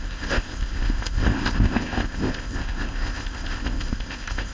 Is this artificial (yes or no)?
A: yes